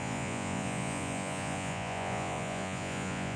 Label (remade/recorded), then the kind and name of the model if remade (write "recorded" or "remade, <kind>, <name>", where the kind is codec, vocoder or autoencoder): remade, vocoder, Vocos